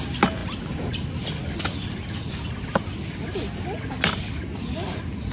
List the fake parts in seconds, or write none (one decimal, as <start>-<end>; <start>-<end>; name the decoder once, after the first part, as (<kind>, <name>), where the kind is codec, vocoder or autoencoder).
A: none